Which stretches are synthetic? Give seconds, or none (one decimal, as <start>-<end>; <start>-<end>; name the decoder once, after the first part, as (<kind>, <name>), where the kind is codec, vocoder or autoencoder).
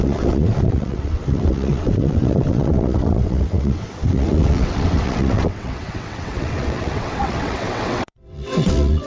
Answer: 0.0-9.1 (vocoder, WaveNeXt)